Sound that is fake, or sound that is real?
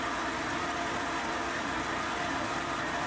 fake